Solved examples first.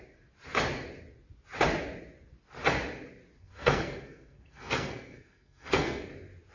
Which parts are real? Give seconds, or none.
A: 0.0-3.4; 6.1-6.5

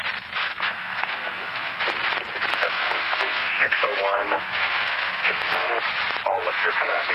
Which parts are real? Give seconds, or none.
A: 0.0-0.4; 1.8-2.5; 5.7-6.3

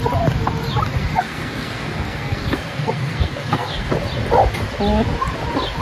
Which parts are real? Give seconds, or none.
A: 0.0-1.0; 3.9-5.8

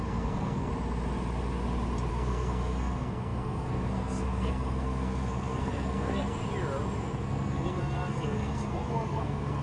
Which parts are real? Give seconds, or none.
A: 0.7-2.1; 6.4-7.0

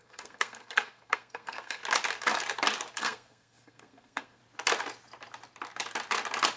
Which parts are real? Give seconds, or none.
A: 1.8-3.0; 4.4-6.6

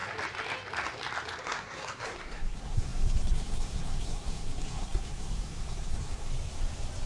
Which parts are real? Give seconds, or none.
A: 0.0-1.4; 6.3-7.1

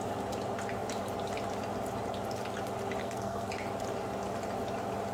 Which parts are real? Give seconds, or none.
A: 0.0-3.0; 3.5-5.1

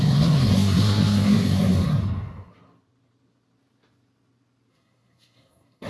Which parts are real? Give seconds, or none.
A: 2.0-4.7